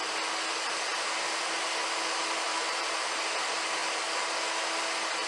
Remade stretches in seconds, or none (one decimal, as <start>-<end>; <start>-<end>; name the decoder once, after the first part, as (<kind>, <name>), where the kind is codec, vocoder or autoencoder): 2.5-3.2 (vocoder, BigVGAN v2)